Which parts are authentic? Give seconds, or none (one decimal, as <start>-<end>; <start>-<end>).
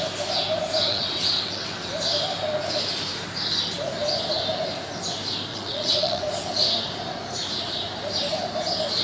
0.0-0.9; 1.9-5.5; 6.2-9.0